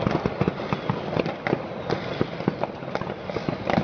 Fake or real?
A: real